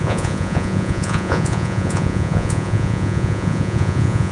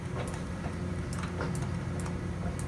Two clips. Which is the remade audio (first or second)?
first